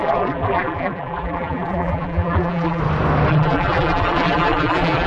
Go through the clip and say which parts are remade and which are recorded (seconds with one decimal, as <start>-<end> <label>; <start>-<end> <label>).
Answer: 0.0-2.8 remade; 2.8-3.3 recorded; 3.3-5.1 remade